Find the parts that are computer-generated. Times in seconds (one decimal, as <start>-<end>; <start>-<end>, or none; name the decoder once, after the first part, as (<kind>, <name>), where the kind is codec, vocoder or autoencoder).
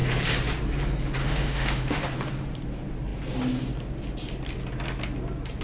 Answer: 1.2-2.0 (autoencoder, DAC-VAE)